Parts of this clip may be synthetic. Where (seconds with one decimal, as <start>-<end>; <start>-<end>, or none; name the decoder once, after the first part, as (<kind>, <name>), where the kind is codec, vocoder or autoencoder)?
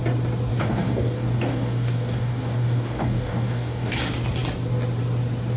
0.5-3.9 (codec, DAC)